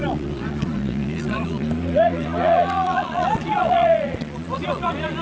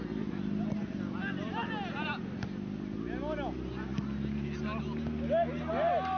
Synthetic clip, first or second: first